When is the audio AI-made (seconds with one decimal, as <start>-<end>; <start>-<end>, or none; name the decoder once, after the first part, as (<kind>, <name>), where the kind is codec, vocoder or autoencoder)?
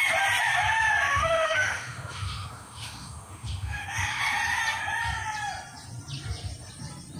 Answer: 1.1-4.2 (autoencoder, DAC-VAE)